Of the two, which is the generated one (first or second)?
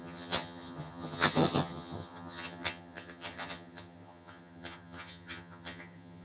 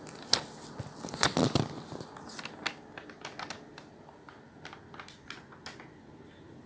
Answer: first